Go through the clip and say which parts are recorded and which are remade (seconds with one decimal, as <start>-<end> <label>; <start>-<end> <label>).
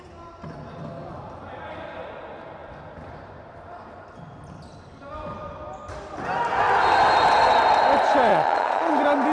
0.0-8.3 recorded; 8.3-8.9 remade; 8.9-9.3 recorded